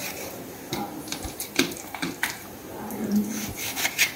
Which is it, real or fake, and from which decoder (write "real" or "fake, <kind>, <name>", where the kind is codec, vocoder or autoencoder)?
fake, vocoder, BigVGAN v2